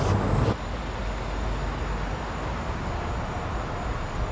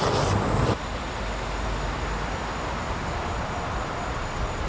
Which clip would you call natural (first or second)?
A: first